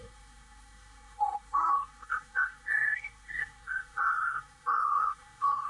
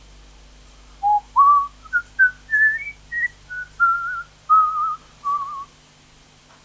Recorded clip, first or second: second